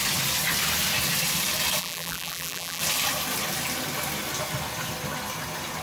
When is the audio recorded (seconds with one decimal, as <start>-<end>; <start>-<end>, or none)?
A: 0.0-1.8; 2.8-5.8

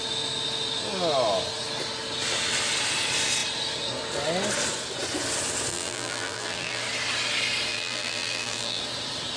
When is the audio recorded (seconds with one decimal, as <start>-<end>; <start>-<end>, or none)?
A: 0.0-5.7; 6.8-7.7; 8.8-9.4

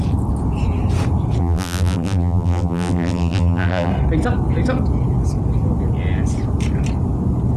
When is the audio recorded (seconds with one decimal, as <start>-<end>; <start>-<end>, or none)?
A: 0.0-1.4; 3.9-7.6

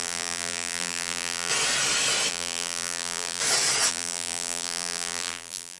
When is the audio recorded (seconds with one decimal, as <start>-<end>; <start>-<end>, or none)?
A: 1.5-2.3; 3.4-3.9

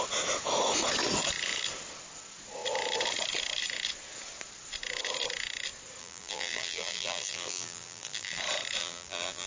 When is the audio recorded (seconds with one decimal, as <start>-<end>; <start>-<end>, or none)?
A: 0.0-6.0; 8.4-8.8

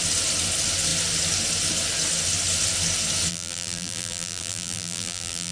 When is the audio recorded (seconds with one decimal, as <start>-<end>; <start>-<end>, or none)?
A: 0.0-3.3

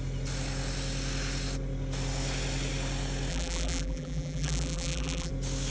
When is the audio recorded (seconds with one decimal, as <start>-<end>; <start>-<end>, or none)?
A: 0.0-3.3; 5.3-5.7